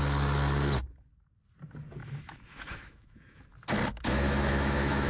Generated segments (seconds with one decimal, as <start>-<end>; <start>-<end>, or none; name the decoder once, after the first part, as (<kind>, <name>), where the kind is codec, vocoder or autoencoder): 2.0-3.4 (autoencoder, DAC-VAE); 3.9-5.1